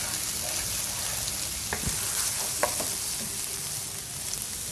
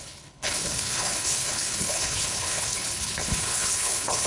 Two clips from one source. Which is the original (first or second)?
first